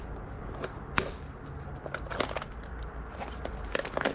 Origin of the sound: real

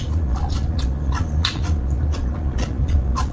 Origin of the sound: fake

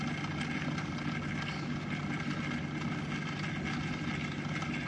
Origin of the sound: real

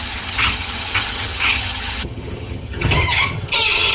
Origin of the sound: fake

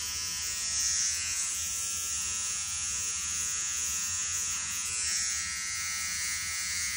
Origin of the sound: fake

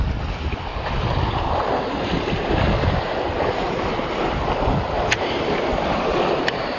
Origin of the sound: real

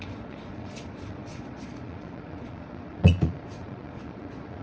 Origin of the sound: fake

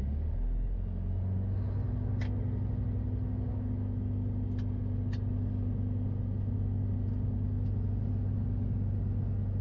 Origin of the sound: real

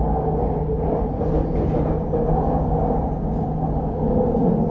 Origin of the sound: real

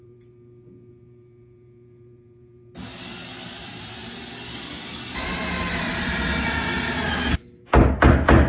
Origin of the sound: real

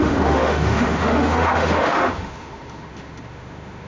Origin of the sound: fake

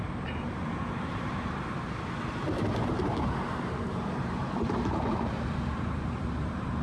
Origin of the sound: fake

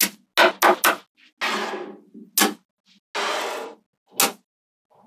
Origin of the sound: real